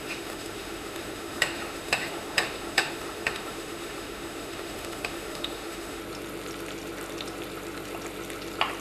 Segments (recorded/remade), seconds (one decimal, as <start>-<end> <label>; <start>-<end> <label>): 0.0-6.0 remade; 6.0-8.8 recorded